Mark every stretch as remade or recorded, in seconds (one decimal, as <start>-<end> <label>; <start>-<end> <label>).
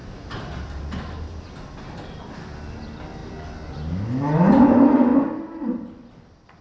0.0-3.2 recorded; 3.2-3.7 remade; 3.7-6.6 recorded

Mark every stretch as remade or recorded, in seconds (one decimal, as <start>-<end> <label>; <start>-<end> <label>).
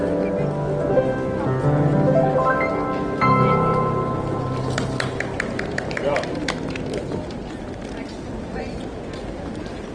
0.0-9.9 recorded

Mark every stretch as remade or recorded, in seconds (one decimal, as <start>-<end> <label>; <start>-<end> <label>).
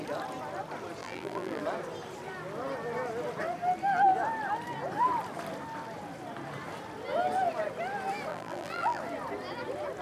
0.0-1.0 recorded; 1.0-1.6 remade; 1.6-8.3 recorded; 8.3-9.0 remade; 9.0-10.0 recorded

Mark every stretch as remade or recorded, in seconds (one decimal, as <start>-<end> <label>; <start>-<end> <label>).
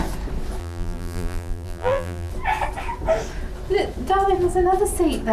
0.0-0.6 recorded; 0.6-2.3 remade; 2.3-5.3 recorded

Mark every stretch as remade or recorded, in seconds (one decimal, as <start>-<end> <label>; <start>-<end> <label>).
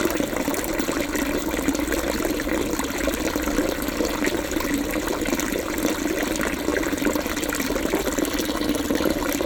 0.0-9.5 recorded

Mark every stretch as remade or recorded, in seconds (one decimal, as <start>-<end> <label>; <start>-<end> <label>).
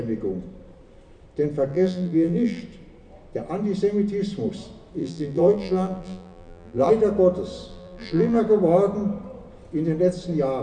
0.0-1.7 recorded; 1.7-2.6 remade; 2.6-5.0 recorded; 5.0-6.9 remade; 6.9-7.7 recorded; 7.7-8.4 remade; 8.4-10.6 recorded